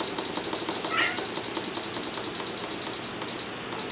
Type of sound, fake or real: real